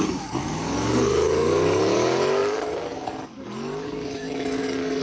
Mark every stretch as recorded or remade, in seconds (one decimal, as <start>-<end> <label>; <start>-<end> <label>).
0.0-5.0 remade